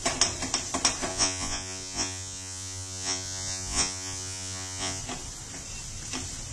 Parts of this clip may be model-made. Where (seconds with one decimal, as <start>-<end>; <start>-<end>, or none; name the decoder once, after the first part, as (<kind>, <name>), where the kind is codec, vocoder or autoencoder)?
1.1-5.0 (vocoder, Vocos)